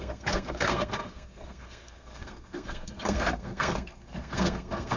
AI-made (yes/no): yes